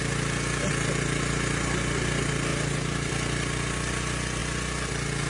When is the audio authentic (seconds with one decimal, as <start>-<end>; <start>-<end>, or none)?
0.0-2.5; 3.1-5.3